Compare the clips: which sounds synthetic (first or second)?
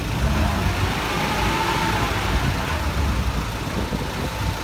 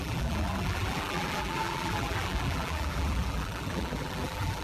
second